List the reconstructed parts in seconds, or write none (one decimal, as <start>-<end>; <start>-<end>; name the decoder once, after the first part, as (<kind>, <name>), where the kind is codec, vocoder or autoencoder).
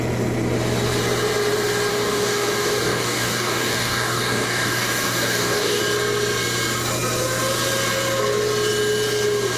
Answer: 1.9-5.8 (codec, DAC)